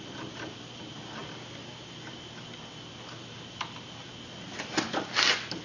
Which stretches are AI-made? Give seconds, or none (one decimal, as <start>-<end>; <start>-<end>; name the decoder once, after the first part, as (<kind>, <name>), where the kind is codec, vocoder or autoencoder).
none